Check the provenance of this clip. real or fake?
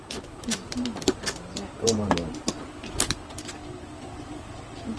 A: real